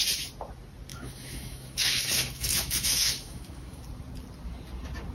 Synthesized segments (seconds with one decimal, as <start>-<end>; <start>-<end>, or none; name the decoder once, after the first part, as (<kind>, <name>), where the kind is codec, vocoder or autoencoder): 0.9-3.8 (autoencoder, DAC-VAE)

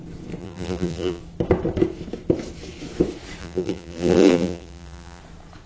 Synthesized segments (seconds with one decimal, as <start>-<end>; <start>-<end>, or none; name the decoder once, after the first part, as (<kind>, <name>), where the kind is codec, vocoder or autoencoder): 0.4-1.2 (vocoder, BigVGAN v2); 3.4-5.2

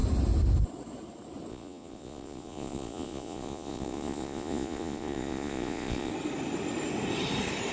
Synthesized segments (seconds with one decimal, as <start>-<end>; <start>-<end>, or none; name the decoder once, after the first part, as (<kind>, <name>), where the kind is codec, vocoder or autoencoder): 1.5-6.1 (vocoder, Vocos)

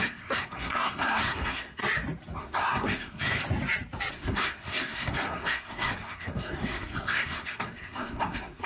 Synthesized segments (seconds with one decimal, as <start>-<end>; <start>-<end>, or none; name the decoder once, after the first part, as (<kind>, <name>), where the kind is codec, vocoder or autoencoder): 0.0-1.8 (codec, SNAC); 2.4-3.4; 4.1-8.7

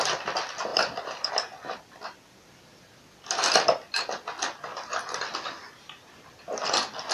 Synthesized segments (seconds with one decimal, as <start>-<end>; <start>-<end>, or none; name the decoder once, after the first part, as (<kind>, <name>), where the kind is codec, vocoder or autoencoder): 0.7-1.3 (vocoder, BigVGAN v2)